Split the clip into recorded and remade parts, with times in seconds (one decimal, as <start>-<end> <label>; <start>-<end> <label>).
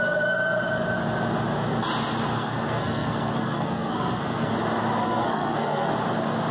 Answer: 0.0-2.3 recorded; 2.3-4.5 remade; 4.5-5.0 recorded; 5.0-5.9 remade; 5.9-6.5 recorded